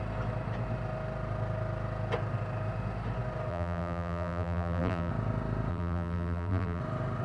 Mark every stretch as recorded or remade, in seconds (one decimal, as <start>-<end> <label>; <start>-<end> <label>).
0.0-3.5 recorded; 3.5-5.1 remade; 5.1-5.7 recorded; 5.7-6.8 remade; 6.8-7.2 recorded

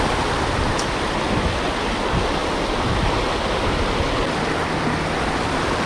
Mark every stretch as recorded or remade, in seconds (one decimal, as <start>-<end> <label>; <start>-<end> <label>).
0.0-5.9 recorded

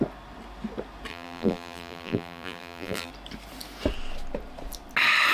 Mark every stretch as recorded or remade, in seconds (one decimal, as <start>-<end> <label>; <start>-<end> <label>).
0.0-1.1 recorded; 1.1-3.1 remade; 3.1-5.3 recorded

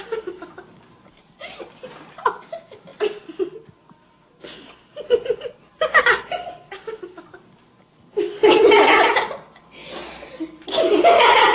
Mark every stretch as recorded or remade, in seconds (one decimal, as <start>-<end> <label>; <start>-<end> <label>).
0.0-11.5 recorded

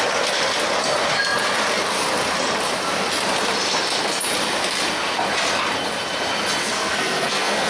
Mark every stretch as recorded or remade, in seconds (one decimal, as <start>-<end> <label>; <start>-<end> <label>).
0.0-6.6 recorded; 6.6-7.7 remade

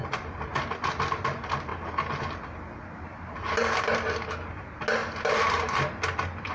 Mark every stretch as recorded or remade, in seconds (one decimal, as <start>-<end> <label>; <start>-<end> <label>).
0.0-6.5 recorded

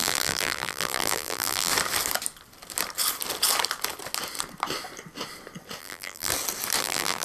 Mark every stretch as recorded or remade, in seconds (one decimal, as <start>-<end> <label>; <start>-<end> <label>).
0.0-1.7 remade; 1.7-5.8 recorded; 5.8-6.3 remade; 6.3-6.8 recorded; 6.8-7.2 remade